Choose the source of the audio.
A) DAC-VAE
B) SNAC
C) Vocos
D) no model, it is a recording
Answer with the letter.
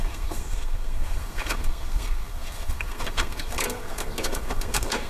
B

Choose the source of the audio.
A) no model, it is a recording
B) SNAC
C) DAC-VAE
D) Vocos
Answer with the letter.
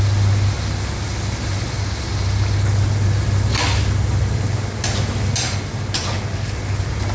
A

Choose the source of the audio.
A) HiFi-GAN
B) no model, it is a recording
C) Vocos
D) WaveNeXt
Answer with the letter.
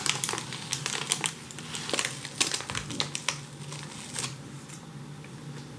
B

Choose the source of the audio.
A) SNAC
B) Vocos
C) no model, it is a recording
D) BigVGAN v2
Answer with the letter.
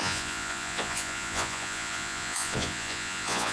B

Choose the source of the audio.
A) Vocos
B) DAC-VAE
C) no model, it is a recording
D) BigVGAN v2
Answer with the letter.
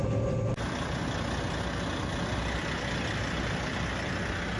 C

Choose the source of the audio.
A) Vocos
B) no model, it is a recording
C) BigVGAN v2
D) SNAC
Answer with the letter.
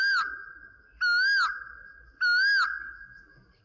B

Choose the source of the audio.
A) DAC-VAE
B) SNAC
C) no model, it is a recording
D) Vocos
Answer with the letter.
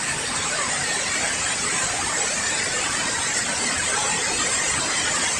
C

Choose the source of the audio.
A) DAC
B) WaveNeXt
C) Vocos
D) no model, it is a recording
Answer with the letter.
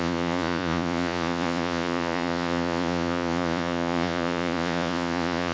C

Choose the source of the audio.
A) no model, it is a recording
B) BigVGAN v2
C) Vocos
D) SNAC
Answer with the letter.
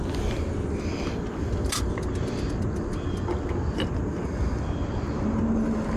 A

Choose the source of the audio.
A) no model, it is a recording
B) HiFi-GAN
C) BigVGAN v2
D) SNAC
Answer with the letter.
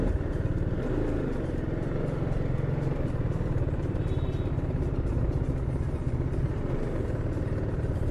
C